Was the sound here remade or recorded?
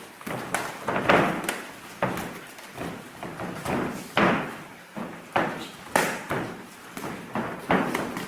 recorded